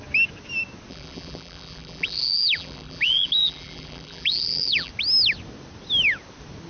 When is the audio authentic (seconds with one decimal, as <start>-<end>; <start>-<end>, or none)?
0.0-0.9; 4.9-6.7